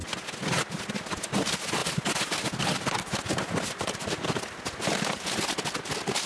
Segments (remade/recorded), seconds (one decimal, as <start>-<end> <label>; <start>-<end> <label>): 0.0-6.3 recorded